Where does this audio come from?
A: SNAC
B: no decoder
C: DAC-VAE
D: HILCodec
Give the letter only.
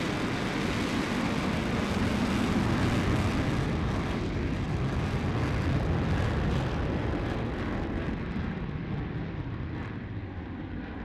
B